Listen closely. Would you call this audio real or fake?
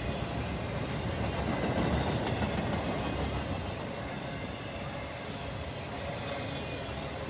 real